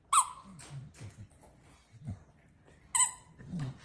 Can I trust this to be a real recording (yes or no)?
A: yes